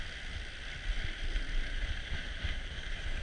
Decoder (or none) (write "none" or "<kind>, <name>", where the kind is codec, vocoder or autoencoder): none